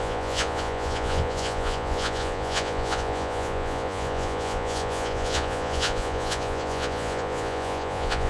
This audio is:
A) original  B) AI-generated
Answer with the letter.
B